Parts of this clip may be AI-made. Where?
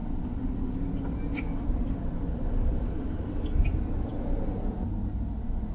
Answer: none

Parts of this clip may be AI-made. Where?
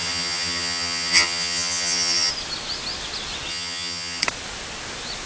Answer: 0.0-2.3 (vocoder, HiFi-GAN); 3.5-4.2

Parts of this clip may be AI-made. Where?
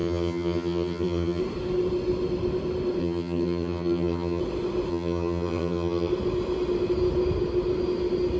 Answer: 0.0-1.4 (vocoder, HiFi-GAN); 3.0-4.4; 4.9-6.1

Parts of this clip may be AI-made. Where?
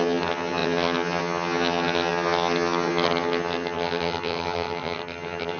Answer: 0.0-5.6 (vocoder, HiFi-GAN)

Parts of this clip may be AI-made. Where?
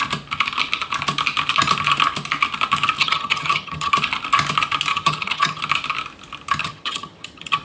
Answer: 3.0-3.9 (vocoder, HiFi-GAN); 4.9-5.6; 6.6-7.6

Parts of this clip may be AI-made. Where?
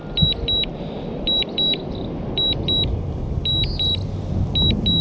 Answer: none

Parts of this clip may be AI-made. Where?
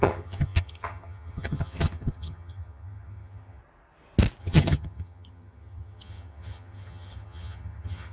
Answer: 0.0-3.6 (vocoder, HiFi-GAN); 4.4-8.1